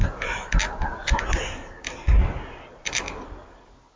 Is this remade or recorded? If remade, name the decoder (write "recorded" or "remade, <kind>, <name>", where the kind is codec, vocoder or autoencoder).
recorded